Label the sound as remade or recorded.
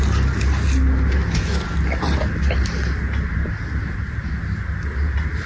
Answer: recorded